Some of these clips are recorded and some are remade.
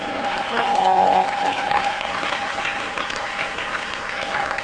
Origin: remade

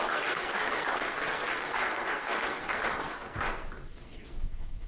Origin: remade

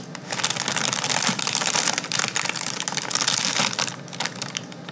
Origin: recorded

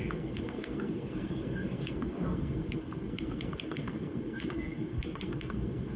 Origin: remade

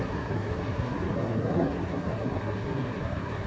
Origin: remade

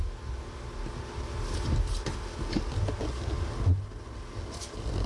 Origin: recorded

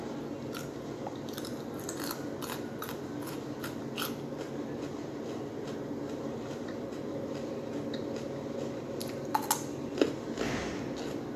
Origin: recorded